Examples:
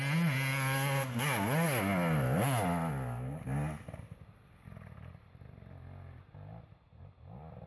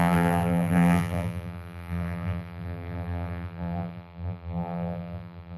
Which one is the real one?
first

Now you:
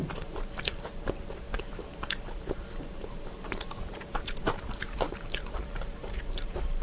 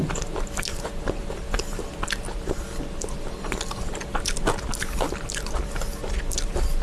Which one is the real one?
second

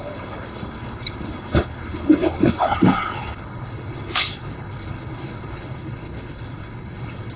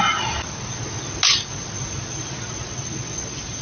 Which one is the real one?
second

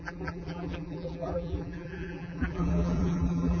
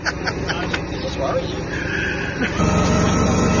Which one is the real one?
second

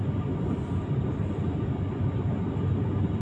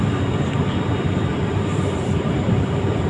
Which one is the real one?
first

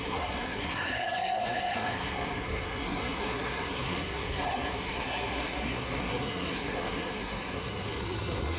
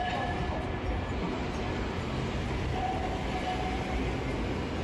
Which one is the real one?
second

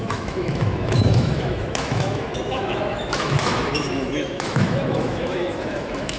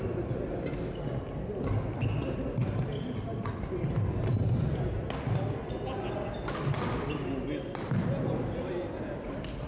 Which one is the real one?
second